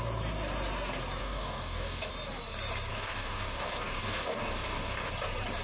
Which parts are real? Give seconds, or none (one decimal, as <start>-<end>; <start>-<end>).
0.0-1.2; 2.1-2.9; 5.1-5.6

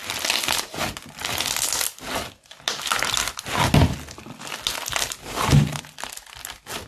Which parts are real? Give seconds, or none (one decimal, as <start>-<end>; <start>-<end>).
0.0-5.0; 5.8-6.9